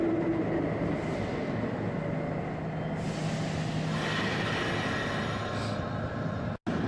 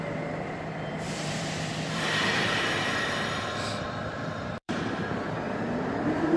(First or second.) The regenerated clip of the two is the second